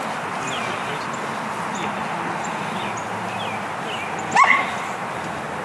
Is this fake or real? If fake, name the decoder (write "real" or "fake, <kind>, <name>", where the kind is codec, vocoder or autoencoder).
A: real